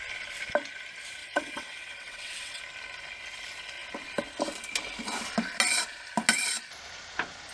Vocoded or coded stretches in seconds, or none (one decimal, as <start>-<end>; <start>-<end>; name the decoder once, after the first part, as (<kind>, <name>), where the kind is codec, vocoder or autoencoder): 1.2-2.6 (vocoder, WaveNeXt)

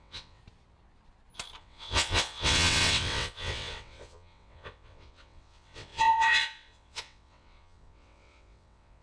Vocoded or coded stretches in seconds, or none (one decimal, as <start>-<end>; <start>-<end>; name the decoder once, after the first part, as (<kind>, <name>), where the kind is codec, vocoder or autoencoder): 0.0-0.4 (vocoder, WaveNeXt); 1.6-9.0

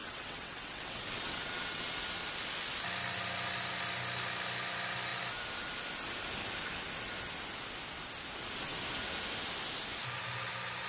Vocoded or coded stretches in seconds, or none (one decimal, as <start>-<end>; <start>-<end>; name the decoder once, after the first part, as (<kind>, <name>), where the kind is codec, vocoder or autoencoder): 0.0-1.9 (vocoder, WaveNeXt)

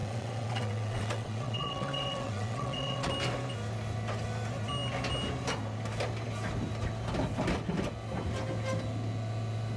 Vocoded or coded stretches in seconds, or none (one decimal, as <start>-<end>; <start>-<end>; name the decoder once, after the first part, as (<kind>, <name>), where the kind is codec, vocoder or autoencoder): 0.0-3.1 (vocoder, WaveNeXt)

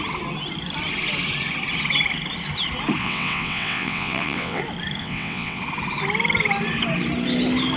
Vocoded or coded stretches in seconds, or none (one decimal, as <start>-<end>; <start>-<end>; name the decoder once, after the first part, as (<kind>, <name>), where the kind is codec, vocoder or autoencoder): 3.0-4.6 (vocoder, WaveNeXt); 5.0-5.6